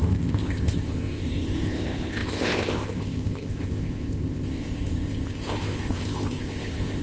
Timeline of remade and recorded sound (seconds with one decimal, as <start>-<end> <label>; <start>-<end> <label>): 0.0-7.0 remade